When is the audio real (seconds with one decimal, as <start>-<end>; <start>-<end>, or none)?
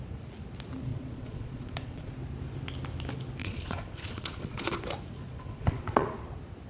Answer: 0.0-0.9; 2.1-3.4; 4.8-5.2; 6.3-6.7